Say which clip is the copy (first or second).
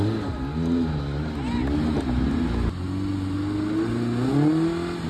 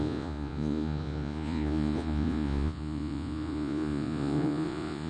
second